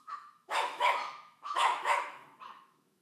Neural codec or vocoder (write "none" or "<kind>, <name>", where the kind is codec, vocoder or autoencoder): autoencoder, DAC-VAE